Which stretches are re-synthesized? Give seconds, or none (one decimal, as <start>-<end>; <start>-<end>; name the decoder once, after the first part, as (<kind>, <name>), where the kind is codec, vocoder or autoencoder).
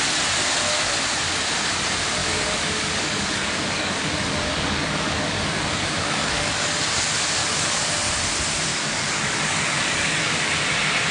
2.2-6.8 (codec, DAC); 7.4-7.9; 8.7-10.5